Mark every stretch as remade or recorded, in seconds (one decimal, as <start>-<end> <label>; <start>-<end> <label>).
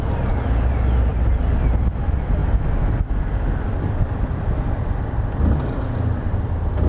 0.0-1.1 recorded; 1.1-1.9 remade; 1.9-6.9 recorded